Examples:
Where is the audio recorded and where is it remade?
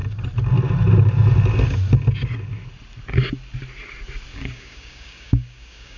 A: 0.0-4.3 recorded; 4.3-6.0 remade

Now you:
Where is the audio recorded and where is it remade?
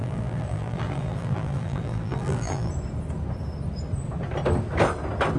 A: 0.0-2.7 remade; 2.7-5.4 recorded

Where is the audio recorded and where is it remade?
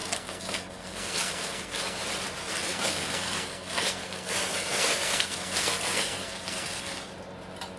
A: 0.0-2.0 remade; 2.0-2.4 recorded; 2.4-7.1 remade; 7.1-7.8 recorded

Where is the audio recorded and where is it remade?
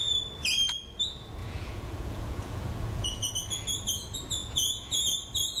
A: 0.0-1.4 recorded; 1.4-3.3 remade; 3.3-4.4 recorded; 4.4-5.1 remade; 5.1-5.6 recorded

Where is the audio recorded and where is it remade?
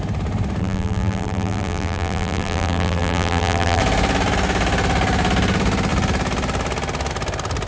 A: 0.0-0.6 recorded; 0.6-3.8 remade; 3.8-7.7 recorded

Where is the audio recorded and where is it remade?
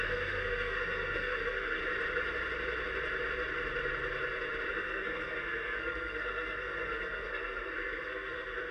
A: 0.0-1.8 remade; 1.8-4.7 recorded; 4.7-8.7 remade